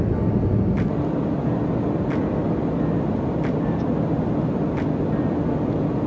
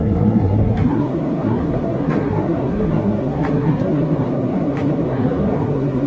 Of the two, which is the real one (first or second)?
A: first